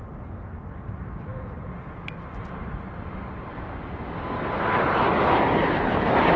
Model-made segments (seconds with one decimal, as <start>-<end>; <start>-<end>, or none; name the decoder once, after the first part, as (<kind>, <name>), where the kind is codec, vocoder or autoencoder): none